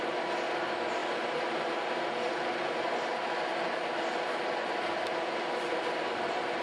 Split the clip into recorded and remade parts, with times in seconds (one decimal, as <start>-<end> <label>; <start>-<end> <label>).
0.0-6.6 recorded